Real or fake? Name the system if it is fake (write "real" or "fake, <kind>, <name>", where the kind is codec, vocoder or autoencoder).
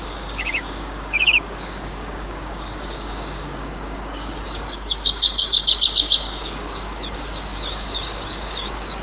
fake, codec, DAC